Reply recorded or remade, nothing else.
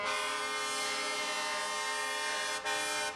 recorded